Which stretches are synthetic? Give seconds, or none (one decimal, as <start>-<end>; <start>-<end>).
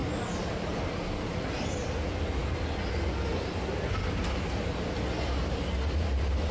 none